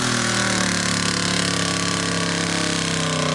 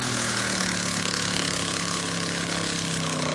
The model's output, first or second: second